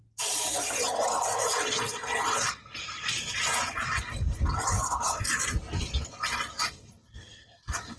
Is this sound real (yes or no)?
yes